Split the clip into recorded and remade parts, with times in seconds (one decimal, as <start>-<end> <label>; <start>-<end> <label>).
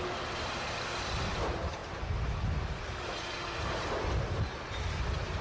0.0-5.4 recorded